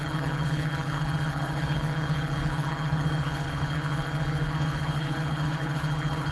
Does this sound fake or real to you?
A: fake